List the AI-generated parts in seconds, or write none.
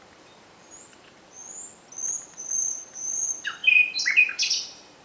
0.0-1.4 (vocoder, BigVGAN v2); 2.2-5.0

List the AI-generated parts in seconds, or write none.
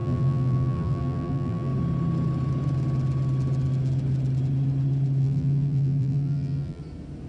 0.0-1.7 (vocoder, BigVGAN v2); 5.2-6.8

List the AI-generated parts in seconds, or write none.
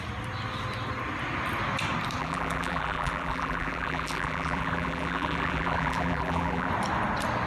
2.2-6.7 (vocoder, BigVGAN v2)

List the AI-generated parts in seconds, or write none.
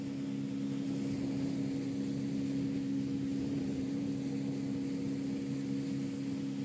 3.3-4.1 (vocoder, BigVGAN v2)